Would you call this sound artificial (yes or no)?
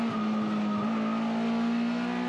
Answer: no